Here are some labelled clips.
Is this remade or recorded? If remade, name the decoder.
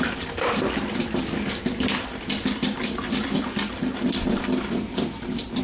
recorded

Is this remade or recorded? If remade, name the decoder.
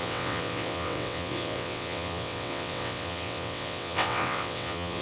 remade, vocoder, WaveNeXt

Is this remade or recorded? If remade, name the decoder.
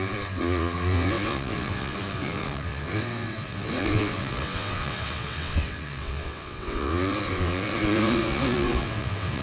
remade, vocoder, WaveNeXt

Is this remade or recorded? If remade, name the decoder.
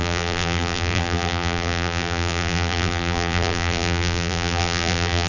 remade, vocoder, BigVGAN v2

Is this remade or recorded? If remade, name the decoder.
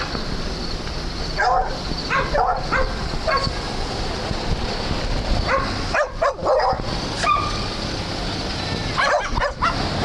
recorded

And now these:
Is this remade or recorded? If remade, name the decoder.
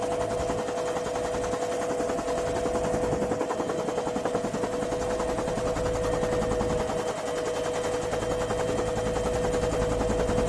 recorded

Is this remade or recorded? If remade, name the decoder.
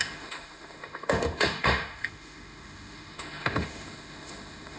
remade, autoencoder, DAC-VAE